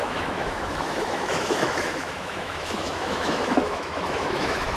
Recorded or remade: remade